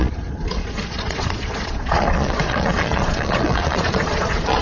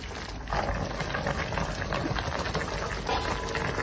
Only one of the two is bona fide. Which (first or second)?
second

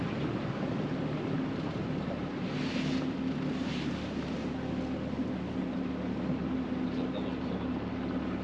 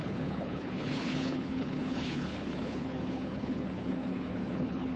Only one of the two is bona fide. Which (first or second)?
first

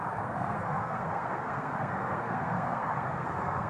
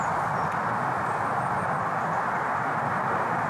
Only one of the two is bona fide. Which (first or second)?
second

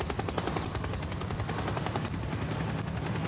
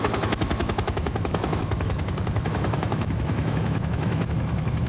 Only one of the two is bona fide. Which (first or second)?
first